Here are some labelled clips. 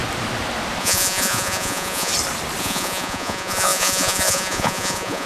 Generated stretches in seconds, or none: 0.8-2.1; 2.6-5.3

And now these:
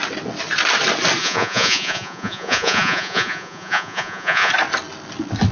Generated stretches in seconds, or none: 1.2-4.5

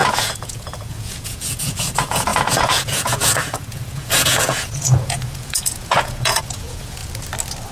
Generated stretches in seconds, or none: 0.0-7.0

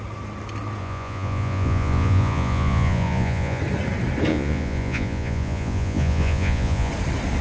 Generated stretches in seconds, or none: 0.8-3.6; 4.3-6.9

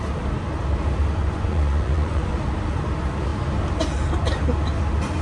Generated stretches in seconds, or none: 1.2-2.3

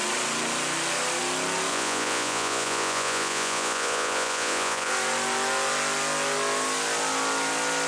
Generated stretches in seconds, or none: 1.7-4.9

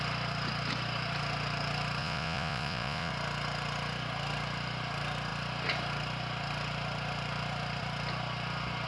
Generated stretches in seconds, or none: 2.0-3.1

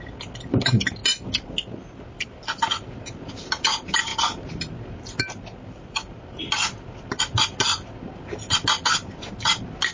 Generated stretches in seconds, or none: none